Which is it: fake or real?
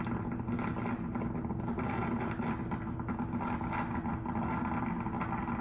real